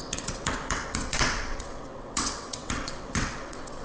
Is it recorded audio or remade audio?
remade